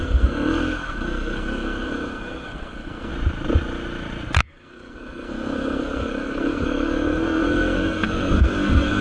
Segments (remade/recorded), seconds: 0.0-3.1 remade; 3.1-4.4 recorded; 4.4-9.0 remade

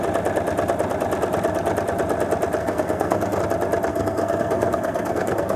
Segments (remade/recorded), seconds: 0.0-2.6 recorded; 2.6-3.4 remade; 3.4-3.9 recorded; 3.9-5.6 remade

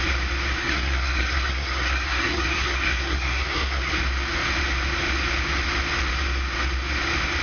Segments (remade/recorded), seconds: 0.0-0.6 recorded; 0.6-3.9 remade; 3.9-7.4 recorded

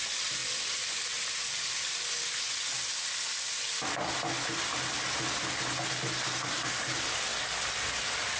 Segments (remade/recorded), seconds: 0.0-8.4 recorded

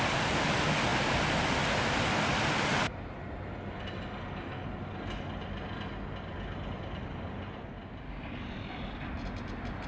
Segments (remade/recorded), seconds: 0.0-9.9 recorded

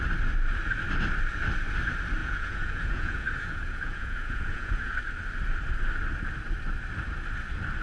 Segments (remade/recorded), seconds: 0.0-2.2 recorded; 2.2-4.9 remade; 4.9-7.8 recorded